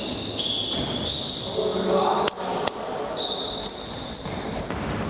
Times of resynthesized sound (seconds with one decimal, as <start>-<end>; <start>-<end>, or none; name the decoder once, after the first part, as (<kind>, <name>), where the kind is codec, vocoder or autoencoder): none